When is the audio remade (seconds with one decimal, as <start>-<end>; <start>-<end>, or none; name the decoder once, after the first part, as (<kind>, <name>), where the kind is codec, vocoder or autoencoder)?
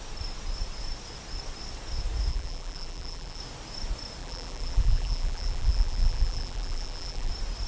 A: 2.3-3.4 (vocoder, BigVGAN v2); 4.2-7.3